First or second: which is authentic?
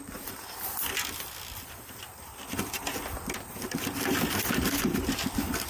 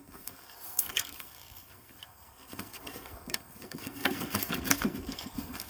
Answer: first